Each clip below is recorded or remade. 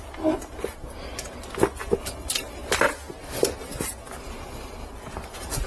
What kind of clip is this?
recorded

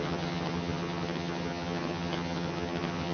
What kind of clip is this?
remade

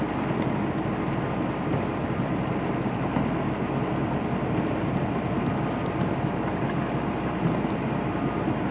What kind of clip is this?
recorded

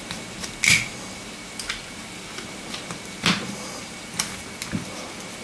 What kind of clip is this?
recorded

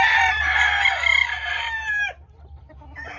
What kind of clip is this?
recorded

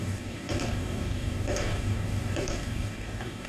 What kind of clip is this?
remade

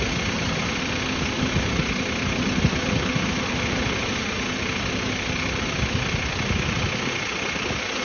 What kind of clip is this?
recorded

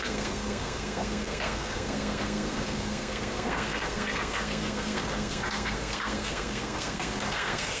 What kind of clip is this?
remade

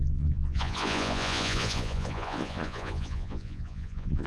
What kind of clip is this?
remade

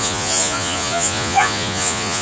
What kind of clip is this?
remade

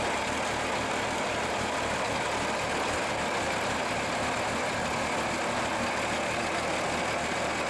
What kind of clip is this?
recorded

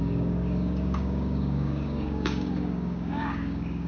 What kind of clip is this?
remade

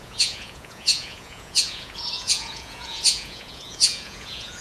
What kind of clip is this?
remade